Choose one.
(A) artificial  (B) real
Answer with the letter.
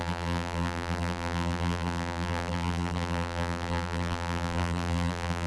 A